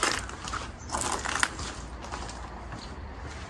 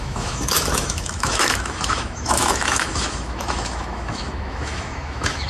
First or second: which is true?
first